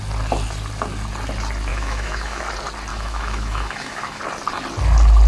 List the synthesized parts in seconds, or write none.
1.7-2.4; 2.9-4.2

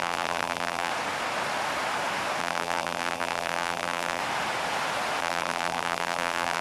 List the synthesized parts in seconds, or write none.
0.0-0.9; 2.4-4.2; 5.2-6.6

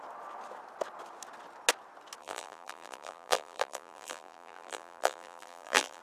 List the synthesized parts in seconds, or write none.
2.2-6.0

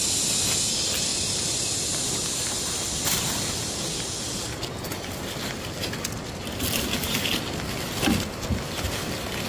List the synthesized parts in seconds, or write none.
none